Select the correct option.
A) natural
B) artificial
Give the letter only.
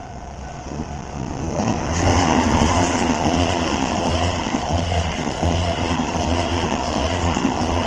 B